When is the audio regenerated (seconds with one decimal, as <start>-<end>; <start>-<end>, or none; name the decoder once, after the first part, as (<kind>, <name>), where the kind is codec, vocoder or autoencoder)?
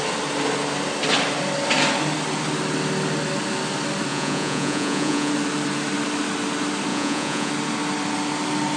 4.1-5.3 (vocoder, Vocos); 6.9-7.5